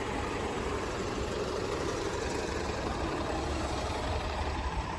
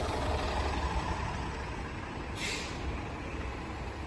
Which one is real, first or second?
second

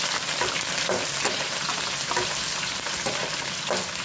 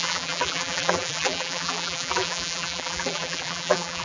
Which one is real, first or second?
first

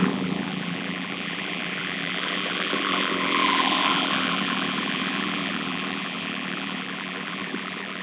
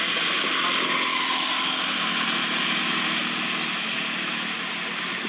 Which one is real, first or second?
second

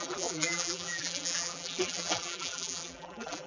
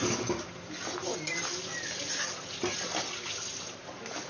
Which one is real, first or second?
second